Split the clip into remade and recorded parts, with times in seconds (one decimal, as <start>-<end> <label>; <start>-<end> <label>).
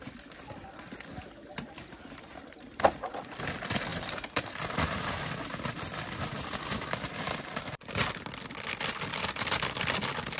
0.0-2.3 recorded; 2.3-3.2 remade; 3.2-3.9 recorded; 3.9-5.0 remade; 5.0-10.4 recorded